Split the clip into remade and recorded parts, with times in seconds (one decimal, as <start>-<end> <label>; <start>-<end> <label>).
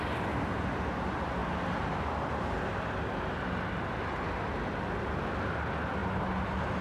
0.0-6.8 recorded